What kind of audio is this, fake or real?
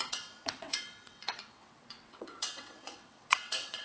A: fake